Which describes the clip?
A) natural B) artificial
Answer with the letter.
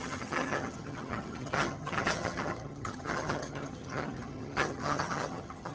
B